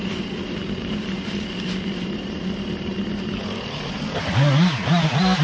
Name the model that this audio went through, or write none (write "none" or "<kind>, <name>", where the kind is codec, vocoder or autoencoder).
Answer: none